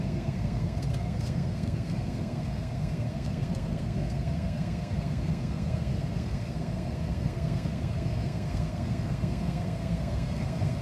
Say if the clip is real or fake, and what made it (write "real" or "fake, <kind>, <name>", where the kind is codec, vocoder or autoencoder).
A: fake, codec, SNAC